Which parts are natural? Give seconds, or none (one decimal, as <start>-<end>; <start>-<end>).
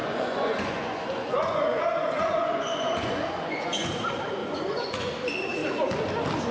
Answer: 3.9-4.4; 5.1-6.5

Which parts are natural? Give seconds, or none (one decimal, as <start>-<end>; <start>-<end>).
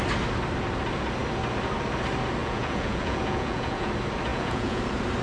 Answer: 0.0-2.4; 3.9-4.3; 4.8-5.2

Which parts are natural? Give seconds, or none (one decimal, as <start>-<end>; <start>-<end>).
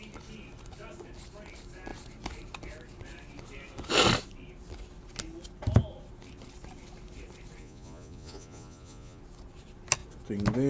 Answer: 0.0-7.6; 9.2-10.7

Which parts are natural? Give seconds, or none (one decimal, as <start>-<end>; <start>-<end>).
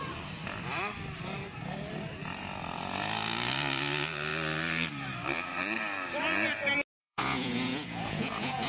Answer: 0.0-7.0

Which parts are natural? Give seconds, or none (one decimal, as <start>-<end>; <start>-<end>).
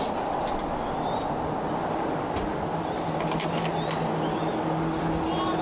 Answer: 0.0-5.6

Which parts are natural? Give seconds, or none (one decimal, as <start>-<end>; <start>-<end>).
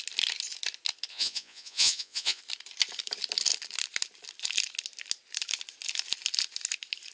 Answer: 0.0-1.1; 2.4-7.1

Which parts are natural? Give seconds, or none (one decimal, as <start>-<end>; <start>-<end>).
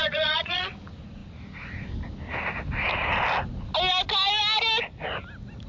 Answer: 0.7-5.7